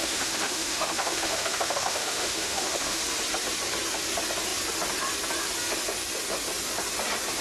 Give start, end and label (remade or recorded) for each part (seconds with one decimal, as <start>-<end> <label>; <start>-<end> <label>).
0.0-3.0 remade; 3.0-7.4 recorded